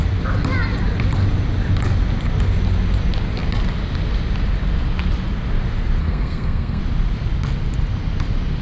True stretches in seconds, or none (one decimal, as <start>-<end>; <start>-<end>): 0.0-6.0; 6.8-8.6